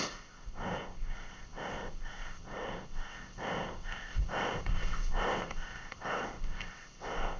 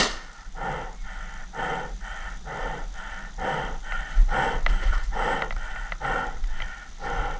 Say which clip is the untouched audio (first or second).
second